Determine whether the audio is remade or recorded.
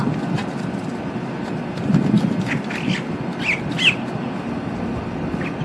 recorded